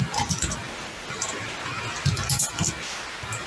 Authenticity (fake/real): real